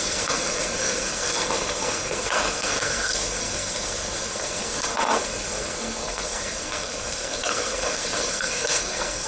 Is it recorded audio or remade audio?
remade